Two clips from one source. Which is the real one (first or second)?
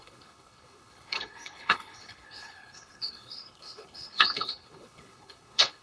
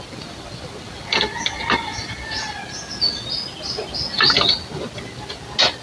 second